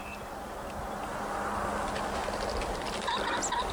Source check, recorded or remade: recorded